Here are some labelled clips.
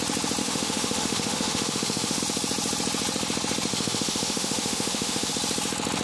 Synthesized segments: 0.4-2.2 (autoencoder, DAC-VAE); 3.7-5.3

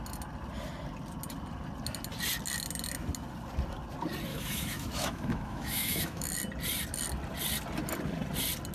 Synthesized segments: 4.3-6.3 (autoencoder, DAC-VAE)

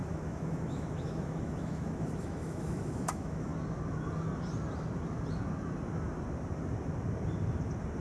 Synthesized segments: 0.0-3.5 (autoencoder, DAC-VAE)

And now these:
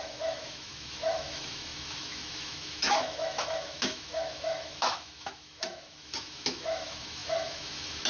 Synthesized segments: 0.0-8.1 (autoencoder, DAC-VAE)